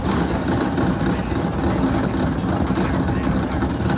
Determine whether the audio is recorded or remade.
recorded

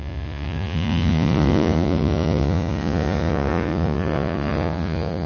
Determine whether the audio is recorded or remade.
remade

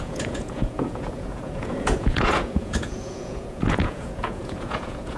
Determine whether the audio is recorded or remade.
remade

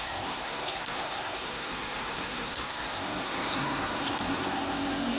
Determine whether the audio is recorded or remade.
remade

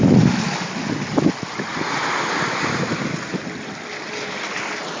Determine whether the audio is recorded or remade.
recorded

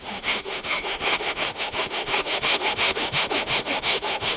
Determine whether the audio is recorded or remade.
remade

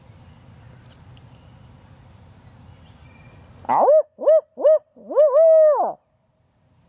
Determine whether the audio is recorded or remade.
recorded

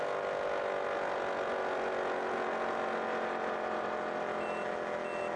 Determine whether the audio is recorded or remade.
recorded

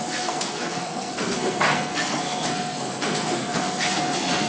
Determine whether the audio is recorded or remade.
remade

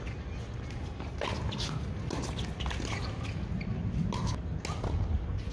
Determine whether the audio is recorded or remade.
recorded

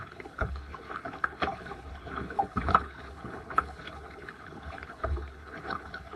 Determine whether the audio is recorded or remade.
remade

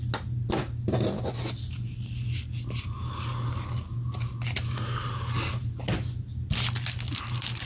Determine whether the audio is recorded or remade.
recorded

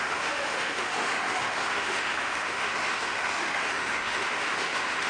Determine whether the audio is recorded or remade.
remade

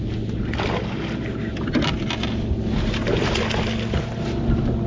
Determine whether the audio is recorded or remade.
recorded